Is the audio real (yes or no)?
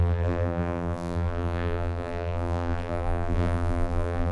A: no